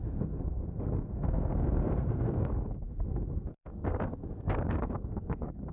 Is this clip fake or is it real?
fake